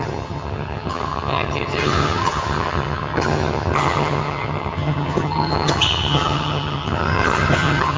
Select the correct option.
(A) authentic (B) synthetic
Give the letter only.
B